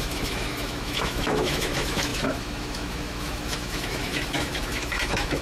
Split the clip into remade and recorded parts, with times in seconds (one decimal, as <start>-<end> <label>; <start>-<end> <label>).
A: 0.0-5.4 remade